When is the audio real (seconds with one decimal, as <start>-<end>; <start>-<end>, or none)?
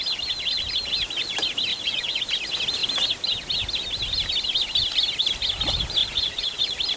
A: 0.0-1.7; 2.2-6.0; 6.6-7.0